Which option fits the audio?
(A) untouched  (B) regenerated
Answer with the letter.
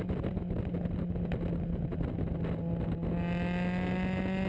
A